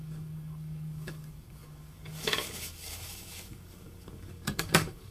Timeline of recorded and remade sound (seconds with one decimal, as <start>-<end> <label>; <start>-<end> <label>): 0.0-5.1 remade